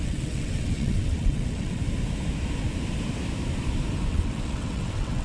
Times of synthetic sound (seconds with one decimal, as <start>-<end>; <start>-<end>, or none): 0.0-1.8; 4.1-5.2